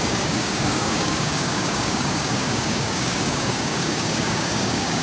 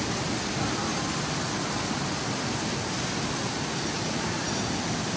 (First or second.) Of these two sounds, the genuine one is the second